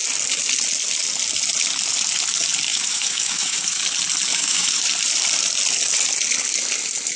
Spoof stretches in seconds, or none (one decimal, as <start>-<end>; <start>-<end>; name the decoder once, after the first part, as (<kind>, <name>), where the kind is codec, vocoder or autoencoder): 2.7-3.8 (autoencoder, DAC-VAE); 4.3-4.8